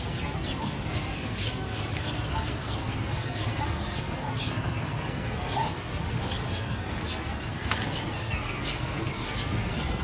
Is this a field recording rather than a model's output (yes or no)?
no